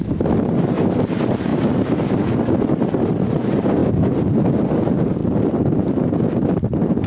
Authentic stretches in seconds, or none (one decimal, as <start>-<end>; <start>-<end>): 5.2-5.9